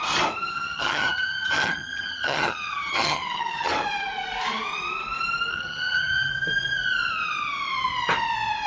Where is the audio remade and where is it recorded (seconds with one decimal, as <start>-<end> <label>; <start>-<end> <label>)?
0.0-0.5 recorded; 0.5-3.7 remade; 3.7-5.5 recorded; 5.5-6.3 remade; 6.3-8.7 recorded